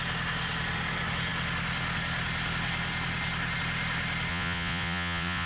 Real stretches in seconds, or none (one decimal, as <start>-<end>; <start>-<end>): 0.0-4.3